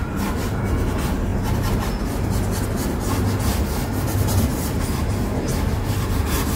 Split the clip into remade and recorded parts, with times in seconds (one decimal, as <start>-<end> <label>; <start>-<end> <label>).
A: 0.0-6.6 recorded